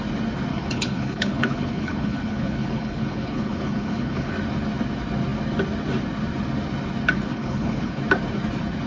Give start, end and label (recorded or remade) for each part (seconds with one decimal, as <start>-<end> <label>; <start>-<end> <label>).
0.0-0.5 recorded; 0.5-4.3 remade; 4.3-7.3 recorded; 7.3-8.0 remade; 8.0-8.9 recorded